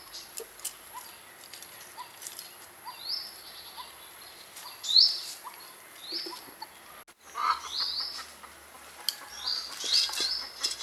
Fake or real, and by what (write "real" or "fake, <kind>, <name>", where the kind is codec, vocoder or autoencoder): real